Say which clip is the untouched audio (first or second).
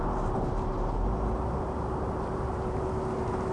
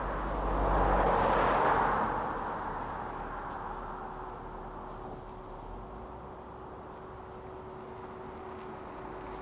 second